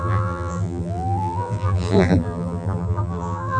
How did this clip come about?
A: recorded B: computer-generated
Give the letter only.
B